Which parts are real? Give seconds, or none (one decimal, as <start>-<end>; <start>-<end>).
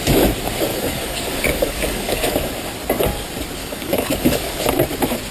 0.0-0.7; 2.5-3.6; 4.6-5.3